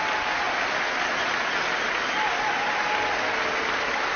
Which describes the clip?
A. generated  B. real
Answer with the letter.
B